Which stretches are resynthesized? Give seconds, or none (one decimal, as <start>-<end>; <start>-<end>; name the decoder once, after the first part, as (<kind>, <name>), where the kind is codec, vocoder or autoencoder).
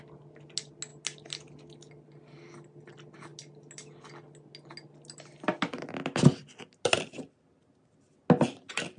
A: none